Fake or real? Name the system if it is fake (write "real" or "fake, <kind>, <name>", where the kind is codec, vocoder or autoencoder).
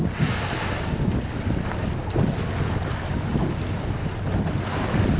real